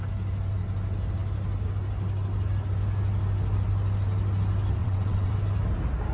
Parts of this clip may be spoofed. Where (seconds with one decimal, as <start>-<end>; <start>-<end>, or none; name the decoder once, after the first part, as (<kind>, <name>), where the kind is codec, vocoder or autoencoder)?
4.8-5.3 (vocoder, WaveNeXt)